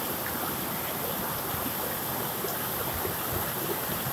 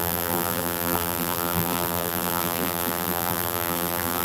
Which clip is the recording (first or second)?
first